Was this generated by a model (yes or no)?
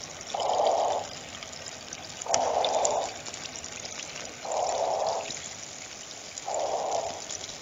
no